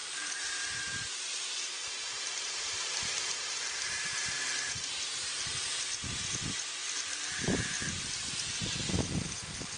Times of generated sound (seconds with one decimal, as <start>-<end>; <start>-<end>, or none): 0.0-4.9; 6.8-7.6